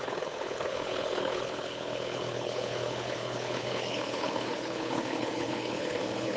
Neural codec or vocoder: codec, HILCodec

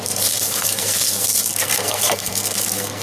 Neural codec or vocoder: codec, SNAC